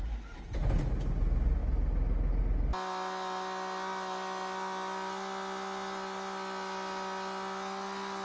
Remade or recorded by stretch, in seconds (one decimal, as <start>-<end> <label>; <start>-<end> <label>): 0.0-8.2 recorded